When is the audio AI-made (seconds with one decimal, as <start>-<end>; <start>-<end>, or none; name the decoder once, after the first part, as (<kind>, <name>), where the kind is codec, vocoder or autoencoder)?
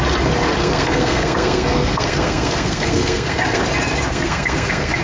0.6-3.6 (codec, SNAC); 4.1-5.0